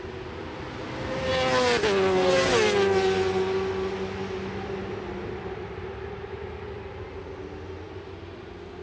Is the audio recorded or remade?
recorded